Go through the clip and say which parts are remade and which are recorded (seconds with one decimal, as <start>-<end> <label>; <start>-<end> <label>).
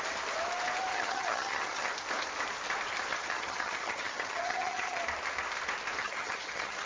0.0-0.9 recorded; 0.9-1.9 remade; 1.9-3.1 recorded; 3.1-5.0 remade; 5.0-6.0 recorded; 6.0-6.9 remade